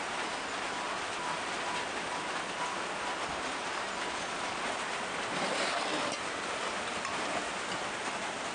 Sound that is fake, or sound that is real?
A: real